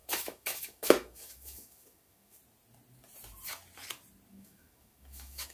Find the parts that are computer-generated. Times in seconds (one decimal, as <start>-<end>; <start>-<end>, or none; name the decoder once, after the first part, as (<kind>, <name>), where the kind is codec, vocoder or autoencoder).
0.0-2.4 (autoencoder, DAC-VAE); 4.3-5.5